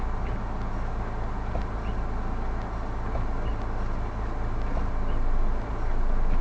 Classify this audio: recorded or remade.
recorded